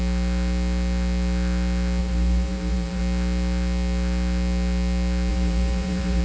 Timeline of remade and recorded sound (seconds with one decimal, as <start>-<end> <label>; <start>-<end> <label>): 0.0-2.0 recorded; 2.0-3.0 remade; 3.0-5.3 recorded; 5.3-6.2 remade